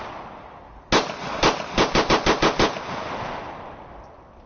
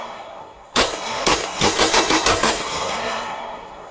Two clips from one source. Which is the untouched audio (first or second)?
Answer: first